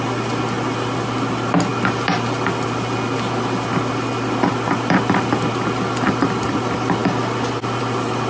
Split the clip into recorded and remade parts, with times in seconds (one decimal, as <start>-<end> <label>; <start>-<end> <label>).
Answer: 0.0-8.3 recorded